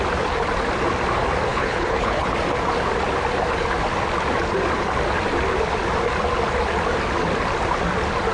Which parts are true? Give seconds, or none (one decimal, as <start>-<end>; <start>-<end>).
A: 0.0-1.5; 2.3-8.3